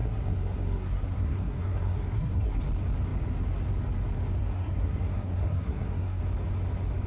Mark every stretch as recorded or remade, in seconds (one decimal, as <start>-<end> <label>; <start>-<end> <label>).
0.0-2.6 remade; 2.6-4.4 recorded; 4.4-6.2 remade; 6.2-7.1 recorded